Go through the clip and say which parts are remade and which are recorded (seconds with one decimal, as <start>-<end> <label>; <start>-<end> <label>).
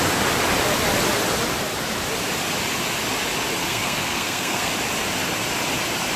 0.0-3.6 recorded; 3.6-4.7 remade; 4.7-6.2 recorded